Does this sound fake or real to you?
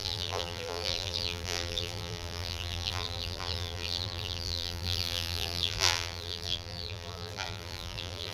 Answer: fake